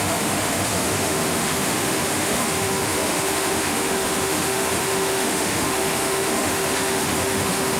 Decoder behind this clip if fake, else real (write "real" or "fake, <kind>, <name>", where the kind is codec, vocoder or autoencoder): fake, autoencoder, DAC-VAE